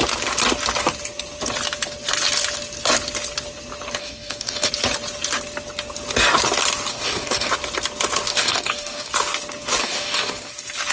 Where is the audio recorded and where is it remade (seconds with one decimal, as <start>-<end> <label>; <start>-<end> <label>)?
0.0-4.0 recorded; 4.0-4.7 remade; 4.7-6.9 recorded; 6.9-7.5 remade; 7.5-8.3 recorded; 8.3-9.1 remade; 9.1-9.8 recorded; 9.8-10.5 remade; 10.5-10.9 recorded